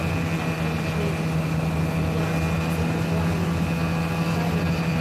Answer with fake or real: real